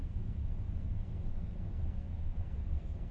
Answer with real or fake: fake